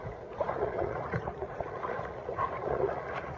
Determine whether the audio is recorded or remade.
remade